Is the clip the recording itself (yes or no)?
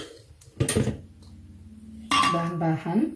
yes